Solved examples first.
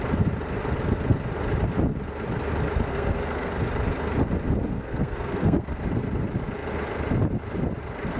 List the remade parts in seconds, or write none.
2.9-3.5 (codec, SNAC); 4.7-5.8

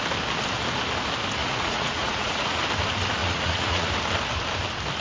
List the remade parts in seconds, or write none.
1.4-2.6 (vocoder, Vocos); 3.2-3.9

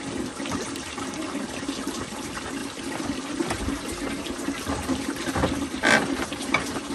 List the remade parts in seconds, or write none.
5.4-6.1 (vocoder, BigVGAN v2)

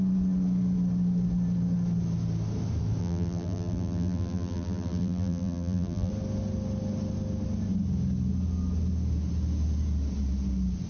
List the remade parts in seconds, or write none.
3.0-6.1 (vocoder, BigVGAN v2)

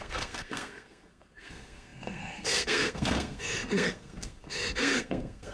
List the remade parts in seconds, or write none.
0.0-5.5 (codec, SNAC)

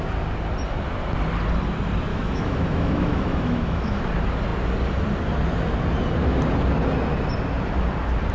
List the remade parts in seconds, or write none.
2.1-4.0 (autoencoder, DAC-VAE)

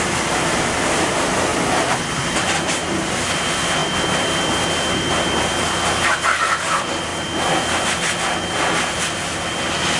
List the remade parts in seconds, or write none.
0.0-1.5 (vocoder, BigVGAN v2); 2.1-7.1; 8.9-10.0

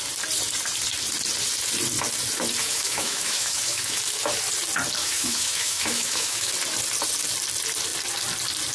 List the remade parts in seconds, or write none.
2.6-4.0 (autoencoder, DAC-VAE); 5.0-6.5